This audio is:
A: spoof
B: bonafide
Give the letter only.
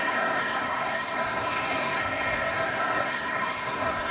A